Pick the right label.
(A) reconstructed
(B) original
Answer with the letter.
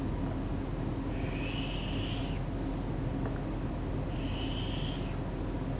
B